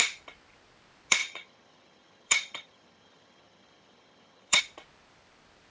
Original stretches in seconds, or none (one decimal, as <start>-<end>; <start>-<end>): 0.0-1.2; 4.6-5.7